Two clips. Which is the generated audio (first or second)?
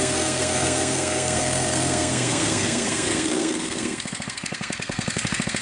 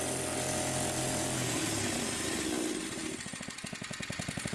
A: first